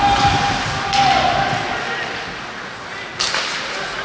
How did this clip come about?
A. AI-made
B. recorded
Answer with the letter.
B